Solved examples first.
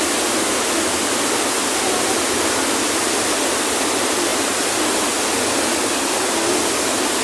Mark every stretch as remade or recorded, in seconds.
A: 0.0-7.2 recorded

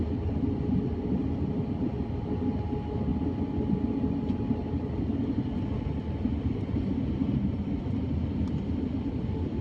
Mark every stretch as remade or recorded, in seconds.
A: 0.0-9.6 recorded

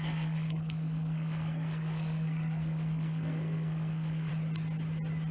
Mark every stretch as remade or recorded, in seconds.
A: 0.0-4.3 remade; 4.3-5.3 recorded